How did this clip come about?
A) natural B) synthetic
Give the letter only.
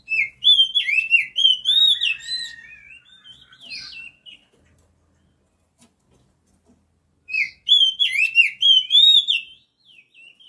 A